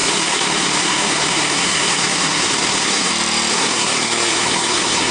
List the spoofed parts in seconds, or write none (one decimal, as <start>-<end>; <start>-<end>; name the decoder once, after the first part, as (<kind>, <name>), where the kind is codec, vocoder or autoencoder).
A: 0.0-3.1 (codec, SNAC); 3.5-5.1